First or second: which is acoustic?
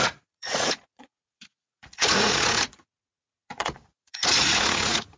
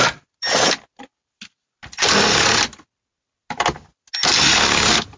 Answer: second